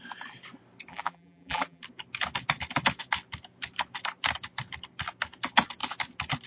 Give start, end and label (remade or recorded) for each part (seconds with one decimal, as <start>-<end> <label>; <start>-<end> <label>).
0.0-0.9 recorded; 0.9-1.8 remade; 1.8-6.5 recorded